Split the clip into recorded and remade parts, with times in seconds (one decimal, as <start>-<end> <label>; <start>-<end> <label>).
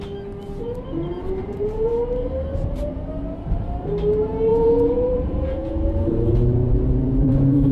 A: 0.0-1.4 recorded; 1.4-1.9 remade; 1.9-4.5 recorded; 4.5-7.7 remade